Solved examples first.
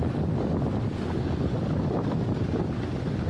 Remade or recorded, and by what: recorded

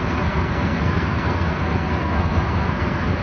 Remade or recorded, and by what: remade, codec, SNAC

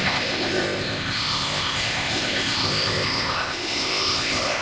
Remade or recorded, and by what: remade, codec, ZipCodec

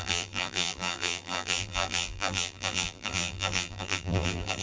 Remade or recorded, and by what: remade, vocoder, BigVGAN v2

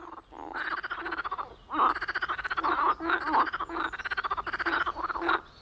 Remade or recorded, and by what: recorded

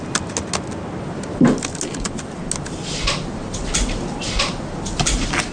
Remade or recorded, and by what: recorded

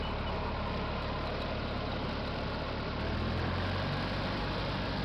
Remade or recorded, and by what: recorded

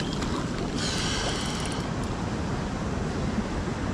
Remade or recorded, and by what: recorded